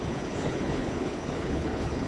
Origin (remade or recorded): remade